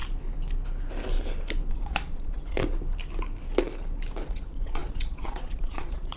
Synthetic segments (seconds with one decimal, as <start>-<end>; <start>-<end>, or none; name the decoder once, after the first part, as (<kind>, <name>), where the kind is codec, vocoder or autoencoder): 1.7-2.6 (vocoder, Vocos); 4.2-6.2